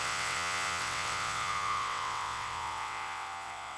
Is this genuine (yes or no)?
no